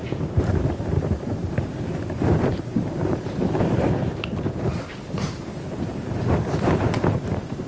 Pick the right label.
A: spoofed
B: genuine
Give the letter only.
A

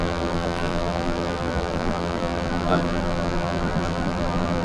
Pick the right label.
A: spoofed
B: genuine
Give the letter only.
A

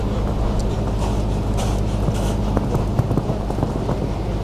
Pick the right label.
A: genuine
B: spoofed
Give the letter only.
A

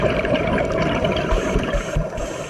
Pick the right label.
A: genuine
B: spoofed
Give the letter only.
B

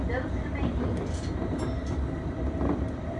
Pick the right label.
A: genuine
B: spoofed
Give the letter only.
B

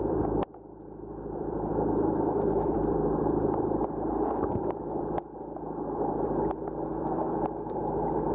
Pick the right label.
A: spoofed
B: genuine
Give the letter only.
A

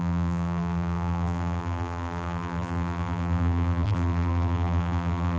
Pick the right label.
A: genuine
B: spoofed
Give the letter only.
B